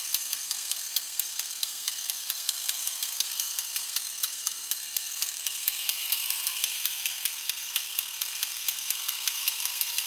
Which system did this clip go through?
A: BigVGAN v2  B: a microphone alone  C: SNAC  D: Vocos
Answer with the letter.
C